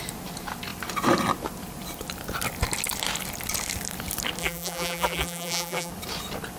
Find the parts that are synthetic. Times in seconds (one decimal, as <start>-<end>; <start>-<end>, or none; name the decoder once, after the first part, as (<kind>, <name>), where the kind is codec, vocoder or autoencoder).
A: 4.4-5.9 (vocoder, BigVGAN v2)